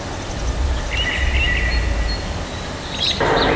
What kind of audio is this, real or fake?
real